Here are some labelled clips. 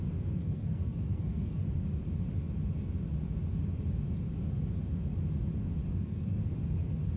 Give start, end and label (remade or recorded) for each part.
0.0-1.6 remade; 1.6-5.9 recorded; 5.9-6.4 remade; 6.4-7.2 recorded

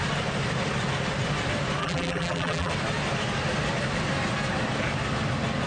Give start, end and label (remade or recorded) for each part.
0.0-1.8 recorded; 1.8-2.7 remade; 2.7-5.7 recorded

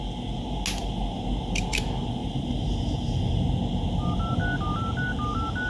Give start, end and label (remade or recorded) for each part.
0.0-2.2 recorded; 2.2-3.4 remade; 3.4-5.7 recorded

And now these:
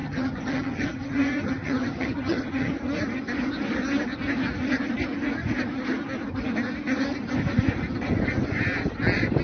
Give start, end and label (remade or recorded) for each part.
0.0-2.7 remade; 2.7-9.4 recorded

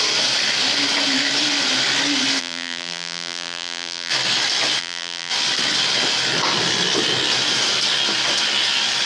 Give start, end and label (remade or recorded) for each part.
0.0-2.4 recorded; 2.4-4.1 remade; 4.1-4.8 recorded; 4.8-5.3 remade; 5.3-9.1 recorded

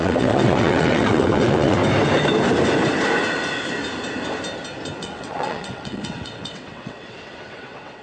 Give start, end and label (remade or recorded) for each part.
0.0-1.8 remade; 1.8-5.0 recorded; 5.0-8.0 remade

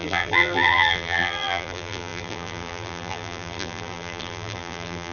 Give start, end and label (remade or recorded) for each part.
0.0-5.1 remade